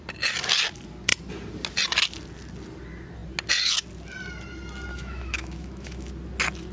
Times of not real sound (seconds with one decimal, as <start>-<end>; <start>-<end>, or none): 4.9-6.1